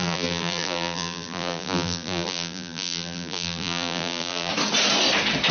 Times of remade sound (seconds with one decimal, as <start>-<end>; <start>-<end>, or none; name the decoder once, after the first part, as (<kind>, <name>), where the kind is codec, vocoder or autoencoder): 0.0-4.5 (vocoder, BigVGAN v2)